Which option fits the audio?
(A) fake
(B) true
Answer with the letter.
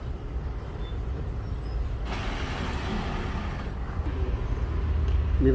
B